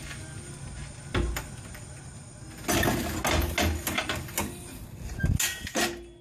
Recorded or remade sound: recorded